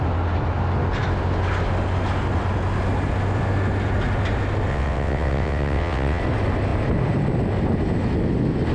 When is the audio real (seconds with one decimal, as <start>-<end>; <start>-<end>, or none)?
0.0-4.7; 6.2-8.7